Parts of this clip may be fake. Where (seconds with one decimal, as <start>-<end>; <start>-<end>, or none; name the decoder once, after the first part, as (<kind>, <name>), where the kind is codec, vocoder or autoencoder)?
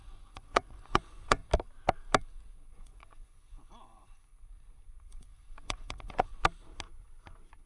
0.0-1.4 (vocoder, Vocos); 2.8-4.3; 5.1-6.3